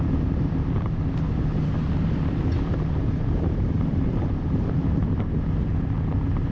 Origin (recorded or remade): remade